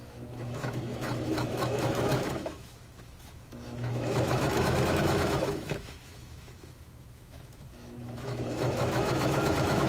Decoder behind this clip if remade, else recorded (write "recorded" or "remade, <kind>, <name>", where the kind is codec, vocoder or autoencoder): remade, autoencoder, DAC-VAE